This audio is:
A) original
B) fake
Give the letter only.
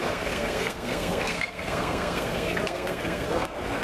B